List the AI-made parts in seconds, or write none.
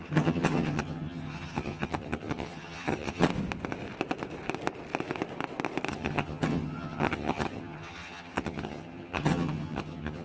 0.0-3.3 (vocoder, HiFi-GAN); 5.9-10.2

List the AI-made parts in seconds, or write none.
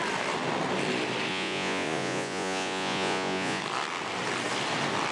1.3-3.6 (vocoder, Vocos)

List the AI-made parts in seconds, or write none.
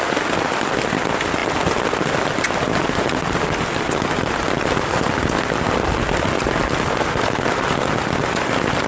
none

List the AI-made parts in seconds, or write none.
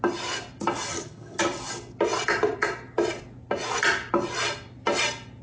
0.9-1.4 (vocoder, HiFi-GAN)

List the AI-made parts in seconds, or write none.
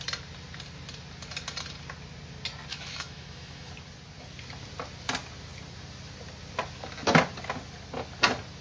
2.7-3.7 (autoencoder, DAC-VAE)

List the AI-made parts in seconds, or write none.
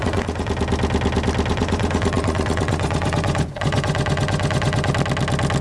0.0-0.5 (vocoder, Vocos); 1.5-4.9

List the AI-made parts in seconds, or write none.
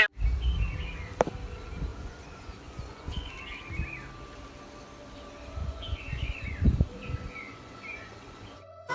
1.9-3.3 (vocoder, Vocos); 5.6-8.9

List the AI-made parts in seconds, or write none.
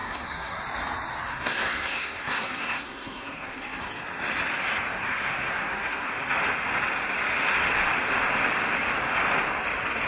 0.0-0.6 (codec, SNAC); 1.3-3.9; 4.9-6.1